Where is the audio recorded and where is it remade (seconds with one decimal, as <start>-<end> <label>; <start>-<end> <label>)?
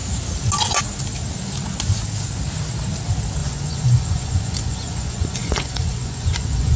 0.0-3.4 recorded; 3.4-6.8 remade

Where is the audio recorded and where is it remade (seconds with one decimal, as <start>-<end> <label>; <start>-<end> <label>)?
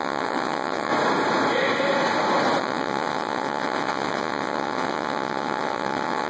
0.0-0.9 remade; 0.9-2.6 recorded; 2.6-6.3 remade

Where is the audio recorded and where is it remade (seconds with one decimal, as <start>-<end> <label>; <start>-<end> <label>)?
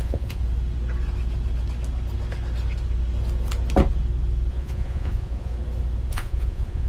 0.0-0.4 remade; 0.4-4.5 recorded; 4.5-5.5 remade; 5.5-6.1 recorded; 6.1-6.9 remade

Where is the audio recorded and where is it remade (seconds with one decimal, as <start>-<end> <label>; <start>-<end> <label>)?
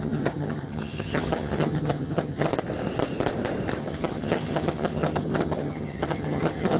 0.0-2.5 remade; 2.5-3.8 recorded; 3.8-6.8 remade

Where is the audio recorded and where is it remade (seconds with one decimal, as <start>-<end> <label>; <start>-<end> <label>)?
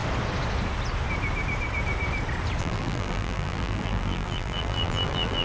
0.0-2.6 recorded; 2.6-5.4 remade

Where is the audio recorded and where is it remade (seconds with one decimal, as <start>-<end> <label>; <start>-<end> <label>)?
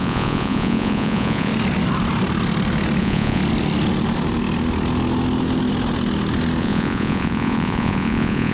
0.0-1.5 remade; 1.5-3.0 recorded; 3.0-3.4 remade; 3.4-6.6 recorded; 6.6-8.5 remade